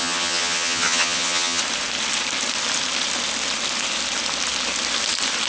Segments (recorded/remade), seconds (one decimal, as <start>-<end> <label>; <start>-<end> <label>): 0.0-1.6 remade; 1.6-5.5 recorded

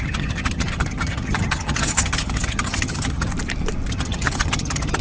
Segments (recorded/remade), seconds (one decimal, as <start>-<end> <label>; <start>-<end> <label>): 0.0-3.3 remade; 3.3-3.9 recorded; 3.9-5.0 remade

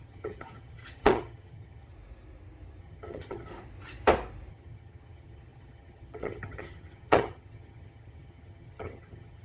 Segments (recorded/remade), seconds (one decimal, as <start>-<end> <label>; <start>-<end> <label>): 0.0-1.9 remade; 1.9-2.8 recorded; 2.8-3.5 remade; 3.5-4.5 recorded; 4.5-9.4 remade

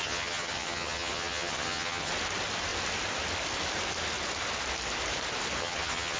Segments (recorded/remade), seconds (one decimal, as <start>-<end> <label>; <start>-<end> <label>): 0.0-2.1 remade; 2.1-5.6 recorded; 5.6-6.2 remade

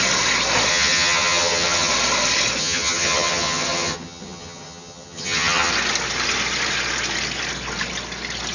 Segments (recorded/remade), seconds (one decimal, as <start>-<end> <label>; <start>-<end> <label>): 0.0-0.7 recorded; 0.7-1.9 remade; 1.9-2.6 recorded; 2.6-5.7 remade; 5.7-8.5 recorded

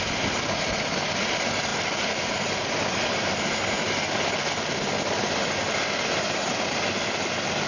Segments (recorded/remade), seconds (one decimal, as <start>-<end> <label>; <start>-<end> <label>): 0.0-7.7 recorded